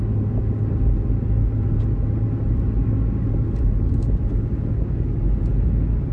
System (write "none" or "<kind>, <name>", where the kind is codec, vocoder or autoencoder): none